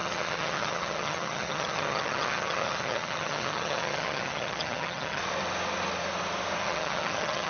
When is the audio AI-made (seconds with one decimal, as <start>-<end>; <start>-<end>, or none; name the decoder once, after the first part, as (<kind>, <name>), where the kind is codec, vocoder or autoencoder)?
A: 0.0-5.2 (vocoder, HiFi-GAN); 6.6-7.5